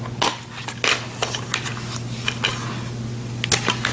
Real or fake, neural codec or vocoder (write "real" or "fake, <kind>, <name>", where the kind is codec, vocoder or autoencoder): real